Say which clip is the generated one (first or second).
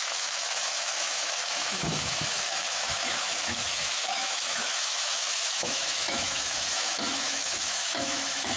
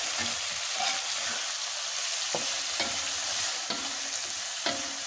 first